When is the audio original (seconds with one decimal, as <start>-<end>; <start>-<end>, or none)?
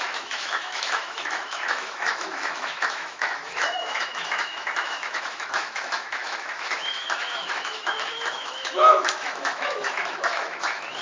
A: none